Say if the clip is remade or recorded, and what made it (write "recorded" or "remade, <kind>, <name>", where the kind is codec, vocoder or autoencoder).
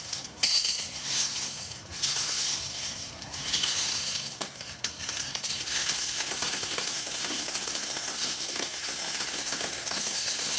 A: remade, codec, SNAC